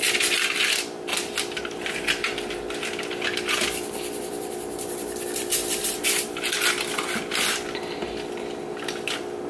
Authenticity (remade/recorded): recorded